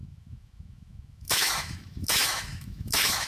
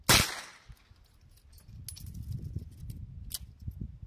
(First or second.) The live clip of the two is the second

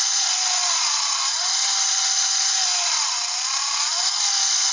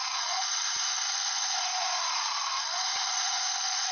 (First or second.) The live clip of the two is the first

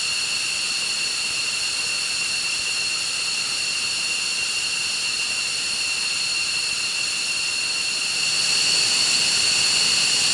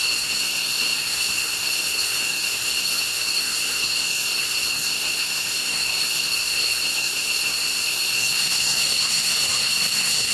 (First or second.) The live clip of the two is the first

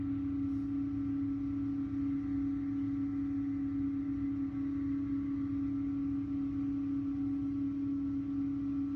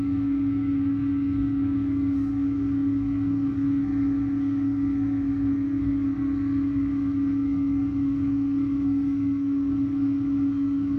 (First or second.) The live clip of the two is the first